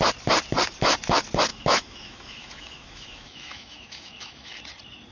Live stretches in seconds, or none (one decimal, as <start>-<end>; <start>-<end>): 0.0-1.5; 4.6-5.1